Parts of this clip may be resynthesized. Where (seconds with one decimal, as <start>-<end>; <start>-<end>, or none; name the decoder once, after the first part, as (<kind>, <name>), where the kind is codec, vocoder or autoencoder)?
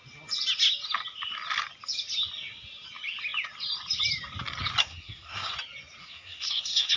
4.8-5.5 (codec, SNAC); 6.0-7.0